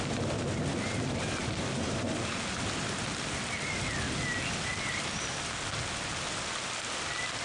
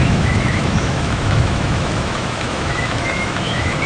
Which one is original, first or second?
first